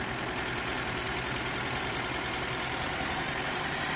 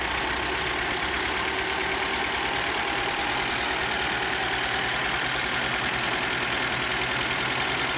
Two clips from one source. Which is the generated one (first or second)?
first